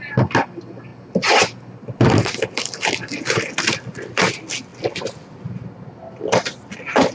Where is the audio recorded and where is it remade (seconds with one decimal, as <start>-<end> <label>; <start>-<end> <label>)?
0.0-7.1 recorded